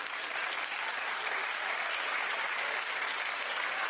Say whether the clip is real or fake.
fake